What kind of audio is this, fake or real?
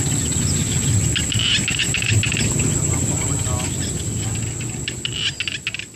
real